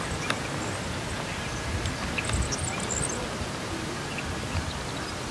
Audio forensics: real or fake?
real